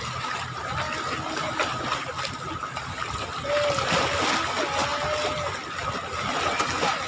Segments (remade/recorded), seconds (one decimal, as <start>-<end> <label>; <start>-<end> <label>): 0.0-7.1 recorded

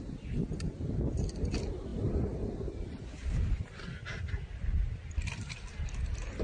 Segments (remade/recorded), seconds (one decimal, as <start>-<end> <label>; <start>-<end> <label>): 0.0-1.9 recorded; 1.9-5.7 remade; 5.7-6.4 recorded

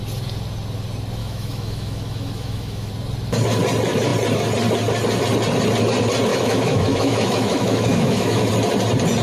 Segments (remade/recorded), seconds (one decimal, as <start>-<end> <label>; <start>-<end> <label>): 0.0-1.2 recorded; 1.2-2.9 remade; 2.9-6.3 recorded; 6.3-8.5 remade; 8.5-9.2 recorded

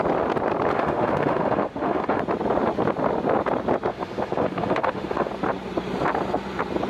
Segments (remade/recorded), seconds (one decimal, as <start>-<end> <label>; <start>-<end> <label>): 0.0-0.7 recorded; 0.7-2.2 remade; 2.2-3.9 recorded; 3.9-5.3 remade; 5.3-6.9 recorded